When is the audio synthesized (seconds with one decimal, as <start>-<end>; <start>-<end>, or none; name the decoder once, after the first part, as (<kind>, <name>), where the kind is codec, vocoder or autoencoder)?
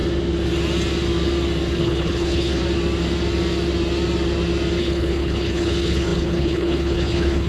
1.8-2.6 (codec, HILCodec); 4.8-7.5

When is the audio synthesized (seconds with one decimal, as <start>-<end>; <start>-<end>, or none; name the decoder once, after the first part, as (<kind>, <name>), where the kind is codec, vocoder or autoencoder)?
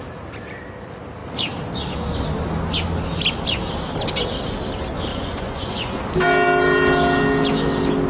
5.1-6.0 (vocoder, Vocos)